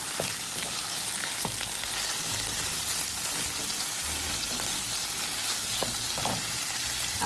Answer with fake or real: real